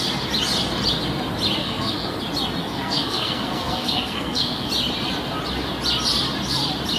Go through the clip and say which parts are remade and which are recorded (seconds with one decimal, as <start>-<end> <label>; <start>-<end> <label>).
0.0-1.6 recorded; 1.6-2.2 remade; 2.2-2.6 recorded; 2.6-4.7 remade; 4.7-7.0 recorded